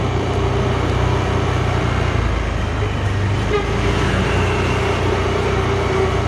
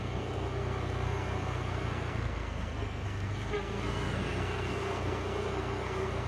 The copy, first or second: second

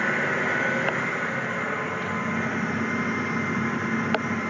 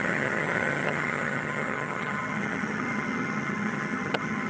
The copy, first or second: second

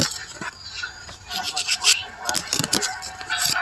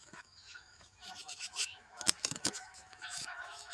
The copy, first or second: second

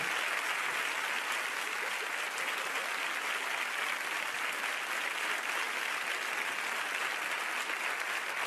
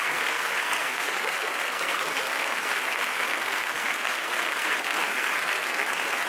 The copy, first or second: second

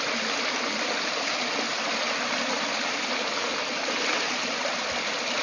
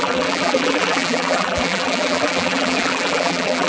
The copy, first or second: second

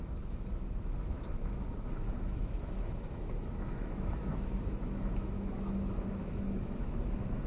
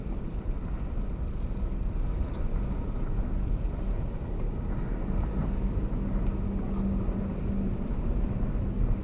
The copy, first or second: first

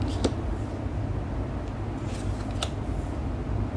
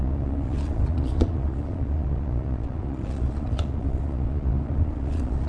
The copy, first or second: second